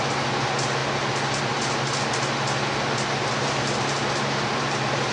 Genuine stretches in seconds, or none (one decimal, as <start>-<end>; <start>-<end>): 0.0-5.1